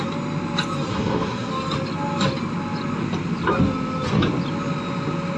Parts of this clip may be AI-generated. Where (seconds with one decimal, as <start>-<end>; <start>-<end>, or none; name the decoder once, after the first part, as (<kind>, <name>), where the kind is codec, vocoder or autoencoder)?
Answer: 0.9-1.5 (codec, SNAC)